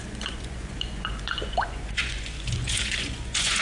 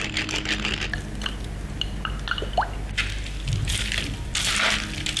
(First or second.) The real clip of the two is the second